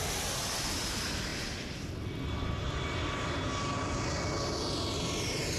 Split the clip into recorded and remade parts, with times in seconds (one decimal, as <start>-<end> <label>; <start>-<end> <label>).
0.0-5.6 recorded